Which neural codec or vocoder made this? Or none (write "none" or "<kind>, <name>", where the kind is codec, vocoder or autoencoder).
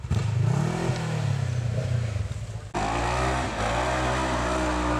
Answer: none